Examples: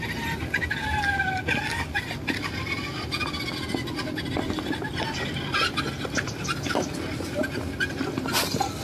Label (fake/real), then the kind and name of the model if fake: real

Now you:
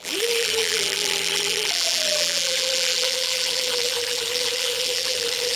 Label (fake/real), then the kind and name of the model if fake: fake, vocoder, BigVGAN v2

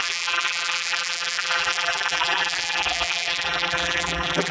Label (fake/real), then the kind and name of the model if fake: fake, vocoder, BigVGAN v2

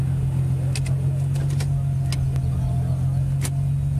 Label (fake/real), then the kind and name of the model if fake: real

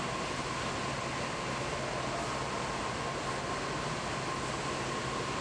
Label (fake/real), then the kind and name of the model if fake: real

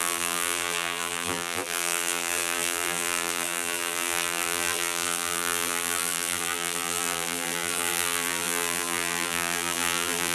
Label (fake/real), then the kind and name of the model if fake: fake, vocoder, BigVGAN v2